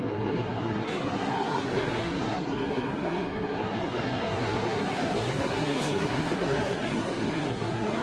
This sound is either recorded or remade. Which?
remade